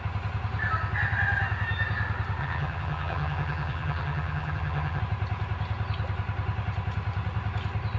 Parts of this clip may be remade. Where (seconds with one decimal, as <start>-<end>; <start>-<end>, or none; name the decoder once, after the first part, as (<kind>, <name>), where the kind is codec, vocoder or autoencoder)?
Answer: 2.4-5.0 (vocoder, HiFi-GAN)